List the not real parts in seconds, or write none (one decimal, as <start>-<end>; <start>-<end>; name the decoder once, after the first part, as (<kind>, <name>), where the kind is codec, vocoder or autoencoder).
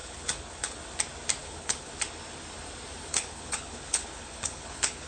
0.0-0.8 (codec, HILCodec); 1.4-1.9; 3.1-5.1